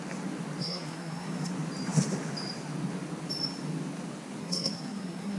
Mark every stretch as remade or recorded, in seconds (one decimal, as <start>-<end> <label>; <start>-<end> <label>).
0.0-0.6 recorded; 0.6-1.5 remade; 1.5-4.4 recorded; 4.4-5.4 remade